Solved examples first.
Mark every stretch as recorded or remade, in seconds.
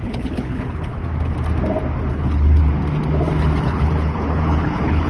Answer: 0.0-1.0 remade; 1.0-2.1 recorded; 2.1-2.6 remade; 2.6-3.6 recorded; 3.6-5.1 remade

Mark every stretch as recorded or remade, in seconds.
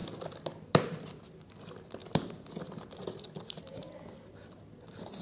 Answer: 0.0-5.2 recorded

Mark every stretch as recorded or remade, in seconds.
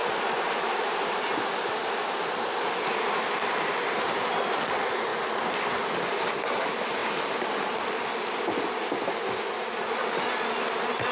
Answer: 0.0-1.2 remade; 1.2-11.1 recorded